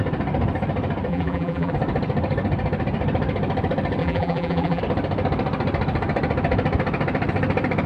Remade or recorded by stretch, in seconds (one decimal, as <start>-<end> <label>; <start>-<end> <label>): 0.0-1.1 recorded; 1.1-1.7 remade; 1.7-4.0 recorded; 4.0-4.8 remade; 4.8-7.9 recorded